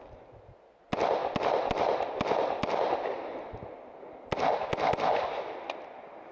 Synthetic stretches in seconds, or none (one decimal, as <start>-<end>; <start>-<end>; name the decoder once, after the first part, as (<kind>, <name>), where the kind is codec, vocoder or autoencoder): none